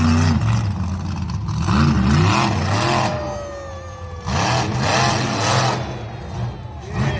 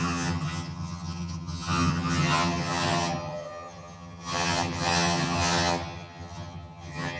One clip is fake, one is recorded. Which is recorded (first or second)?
first